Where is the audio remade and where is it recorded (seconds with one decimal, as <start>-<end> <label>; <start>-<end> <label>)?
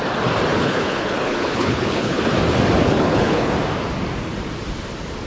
0.0-0.5 recorded; 0.5-2.2 remade; 2.2-2.8 recorded; 2.8-3.5 remade; 3.5-5.3 recorded